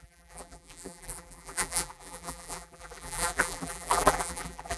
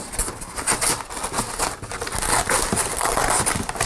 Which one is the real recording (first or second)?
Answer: second